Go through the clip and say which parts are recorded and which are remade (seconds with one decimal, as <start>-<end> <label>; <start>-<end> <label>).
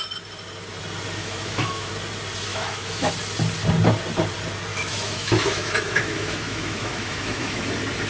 0.0-1.2 recorded; 1.2-1.9 remade; 1.9-2.5 recorded; 2.5-3.1 remade; 3.1-4.7 recorded; 4.7-7.6 remade; 7.6-8.1 recorded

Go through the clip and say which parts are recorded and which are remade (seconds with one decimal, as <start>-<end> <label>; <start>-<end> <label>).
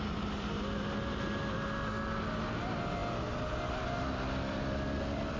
0.0-5.4 recorded